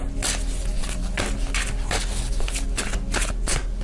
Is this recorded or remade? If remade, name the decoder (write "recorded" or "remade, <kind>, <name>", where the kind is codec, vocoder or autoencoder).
recorded